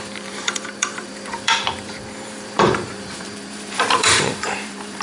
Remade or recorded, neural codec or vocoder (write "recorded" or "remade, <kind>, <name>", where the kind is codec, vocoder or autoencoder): remade, vocoder, BigVGAN v2